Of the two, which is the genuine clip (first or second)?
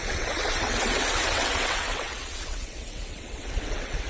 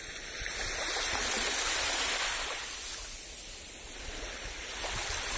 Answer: second